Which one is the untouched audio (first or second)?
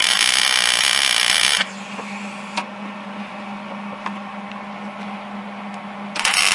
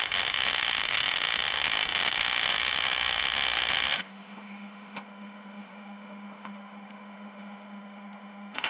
first